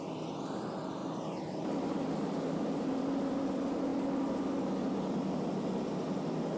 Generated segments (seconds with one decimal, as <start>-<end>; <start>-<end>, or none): 1.0-3.0